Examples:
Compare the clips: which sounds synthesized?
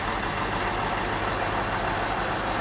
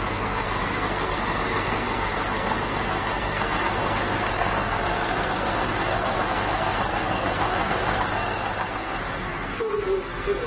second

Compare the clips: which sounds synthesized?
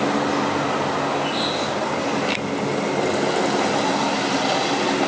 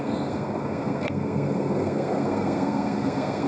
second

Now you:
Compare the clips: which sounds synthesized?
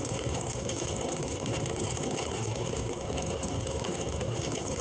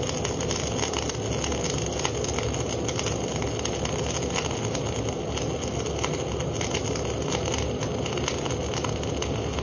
first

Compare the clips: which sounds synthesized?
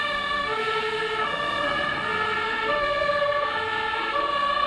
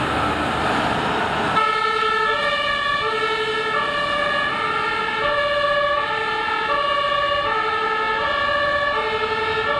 first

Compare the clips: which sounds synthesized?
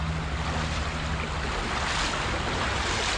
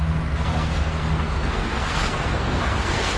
second